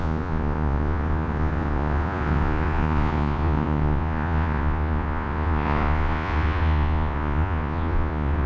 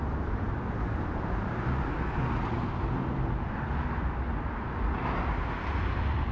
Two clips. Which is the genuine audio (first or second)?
second